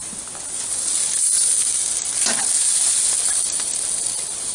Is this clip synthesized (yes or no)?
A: no